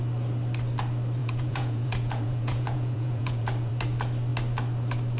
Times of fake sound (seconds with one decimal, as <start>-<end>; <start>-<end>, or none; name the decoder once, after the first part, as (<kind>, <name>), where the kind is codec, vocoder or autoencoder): 1.2-3.7 (vocoder, Vocos)